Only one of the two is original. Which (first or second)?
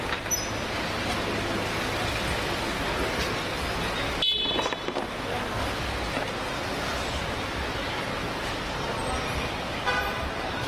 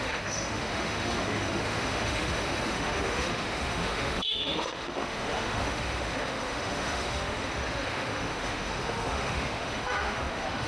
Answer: first